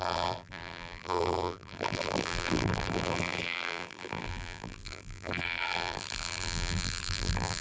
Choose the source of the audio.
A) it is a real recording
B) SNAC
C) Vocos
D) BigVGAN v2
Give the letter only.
D